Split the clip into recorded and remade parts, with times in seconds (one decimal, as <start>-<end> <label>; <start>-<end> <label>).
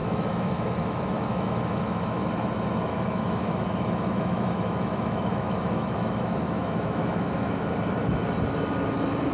0.0-2.2 remade; 2.2-2.9 recorded; 2.9-7.7 remade; 7.7-9.3 recorded